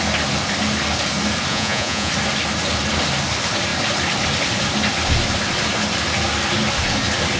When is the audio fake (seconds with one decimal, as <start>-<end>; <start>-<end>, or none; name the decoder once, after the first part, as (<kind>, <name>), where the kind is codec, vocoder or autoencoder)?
1.5-2.1 (vocoder, Vocos)